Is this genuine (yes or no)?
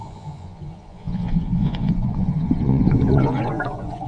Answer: no